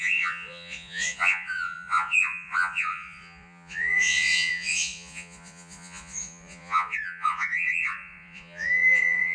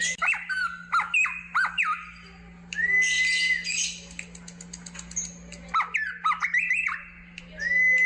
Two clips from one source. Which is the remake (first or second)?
first